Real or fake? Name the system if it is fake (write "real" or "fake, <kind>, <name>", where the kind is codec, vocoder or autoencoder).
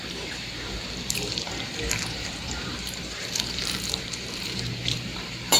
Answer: fake, vocoder, BigVGAN v2